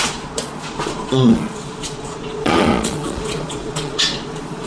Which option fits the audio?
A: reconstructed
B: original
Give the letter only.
A